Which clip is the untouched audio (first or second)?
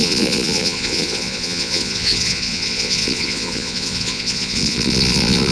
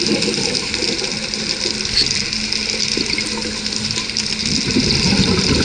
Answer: second